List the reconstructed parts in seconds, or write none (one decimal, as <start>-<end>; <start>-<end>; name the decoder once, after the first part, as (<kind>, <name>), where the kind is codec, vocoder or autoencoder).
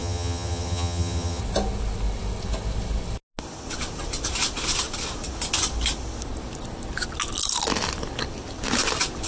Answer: 0.0-1.4 (vocoder, HiFi-GAN)